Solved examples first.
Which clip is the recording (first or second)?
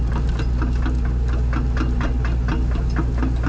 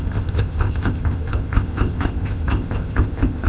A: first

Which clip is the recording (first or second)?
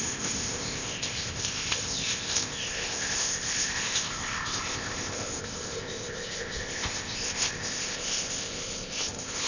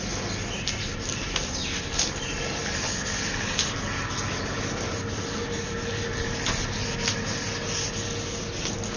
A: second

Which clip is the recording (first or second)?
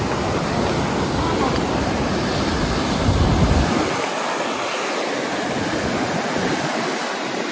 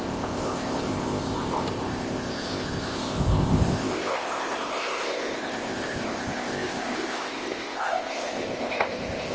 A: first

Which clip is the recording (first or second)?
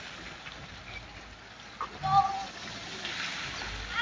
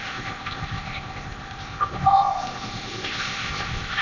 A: first